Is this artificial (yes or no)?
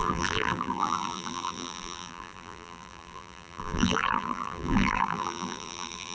yes